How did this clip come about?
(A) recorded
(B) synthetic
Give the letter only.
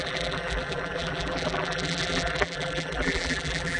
B